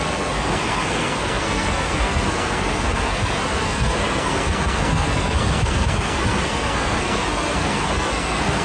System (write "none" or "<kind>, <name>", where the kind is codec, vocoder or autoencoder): codec, SNAC